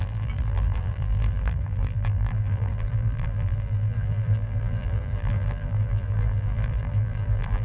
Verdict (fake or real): fake